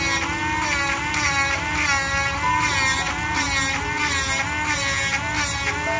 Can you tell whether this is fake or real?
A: real